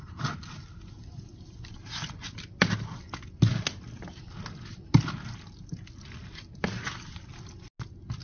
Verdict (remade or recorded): recorded